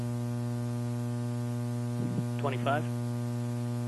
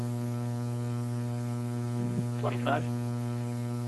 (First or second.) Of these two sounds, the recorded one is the first